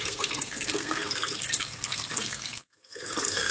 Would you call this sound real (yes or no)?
no